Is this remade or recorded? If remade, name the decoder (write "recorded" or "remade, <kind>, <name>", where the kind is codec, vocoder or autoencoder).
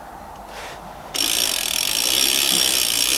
recorded